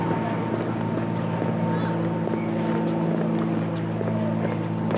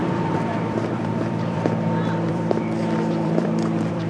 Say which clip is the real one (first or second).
first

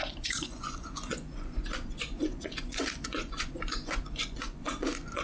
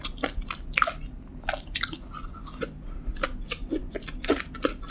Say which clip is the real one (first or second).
second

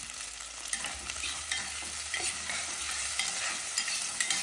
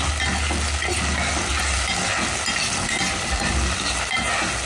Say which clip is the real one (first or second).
second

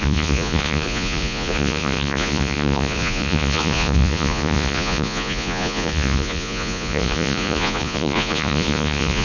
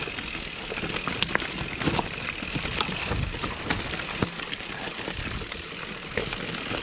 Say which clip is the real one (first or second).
second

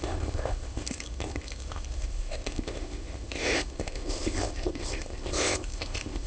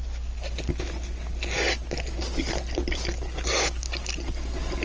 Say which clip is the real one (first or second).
second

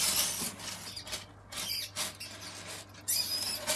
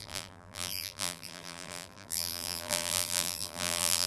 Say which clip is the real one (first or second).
first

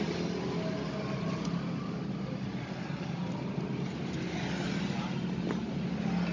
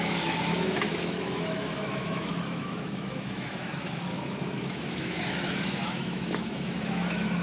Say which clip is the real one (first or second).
first